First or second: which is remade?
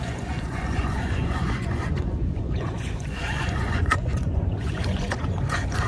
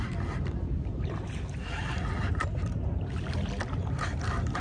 first